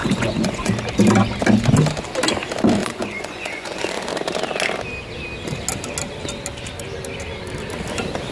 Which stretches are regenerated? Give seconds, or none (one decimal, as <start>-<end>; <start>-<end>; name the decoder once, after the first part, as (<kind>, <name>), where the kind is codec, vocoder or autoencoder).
0.0-0.7 (vocoder, Vocos); 2.8-4.1